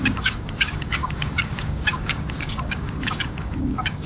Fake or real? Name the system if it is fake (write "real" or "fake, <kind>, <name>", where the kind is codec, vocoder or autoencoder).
fake, codec, DAC